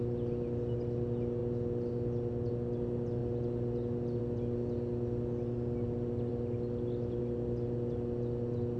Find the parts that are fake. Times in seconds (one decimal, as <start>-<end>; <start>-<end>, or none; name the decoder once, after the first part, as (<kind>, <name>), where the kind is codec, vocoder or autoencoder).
none

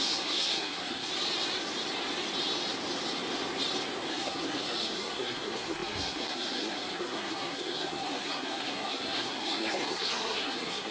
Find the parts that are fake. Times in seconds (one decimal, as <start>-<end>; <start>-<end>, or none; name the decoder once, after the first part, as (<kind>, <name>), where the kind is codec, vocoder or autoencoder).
0.0-1.1 (codec, SNAC); 4.1-10.9

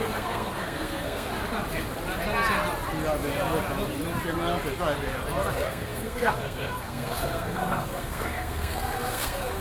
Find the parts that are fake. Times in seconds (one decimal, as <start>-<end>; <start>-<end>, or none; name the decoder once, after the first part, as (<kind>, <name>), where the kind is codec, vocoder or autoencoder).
0.0-1.3 (codec, SNAC); 5.5-9.6

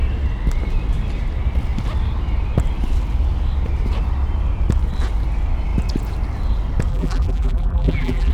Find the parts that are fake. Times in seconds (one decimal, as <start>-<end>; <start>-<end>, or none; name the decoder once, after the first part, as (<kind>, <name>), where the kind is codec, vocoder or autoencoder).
6.9-8.3 (vocoder, BigVGAN v2)

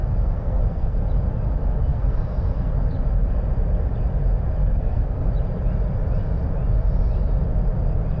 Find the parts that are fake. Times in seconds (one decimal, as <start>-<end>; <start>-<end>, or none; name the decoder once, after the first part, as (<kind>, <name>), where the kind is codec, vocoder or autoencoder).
0.0-1.0 (codec, SNAC); 1.9-2.7; 4.6-5.3

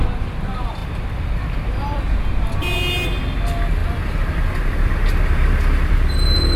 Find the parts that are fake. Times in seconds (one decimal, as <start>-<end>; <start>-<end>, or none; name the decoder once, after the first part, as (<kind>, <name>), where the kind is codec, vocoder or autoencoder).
0.8-2.0 (vocoder, BigVGAN v2); 3.8-5.9